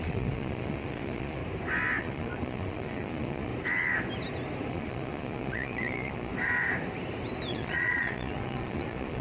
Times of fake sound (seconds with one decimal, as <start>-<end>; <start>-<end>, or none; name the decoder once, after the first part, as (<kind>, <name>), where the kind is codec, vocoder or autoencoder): 0.0-1.4 (vocoder, Vocos); 2.0-3.5; 4.7-6.3; 7.5-9.2